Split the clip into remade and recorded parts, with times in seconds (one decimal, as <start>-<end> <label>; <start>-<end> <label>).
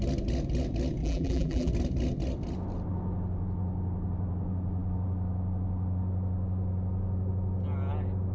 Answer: 0.0-1.0 recorded; 1.0-1.7 remade; 1.7-8.3 recorded